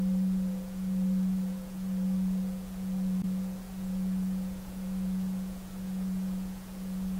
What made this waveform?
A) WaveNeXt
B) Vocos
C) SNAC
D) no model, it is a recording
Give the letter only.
B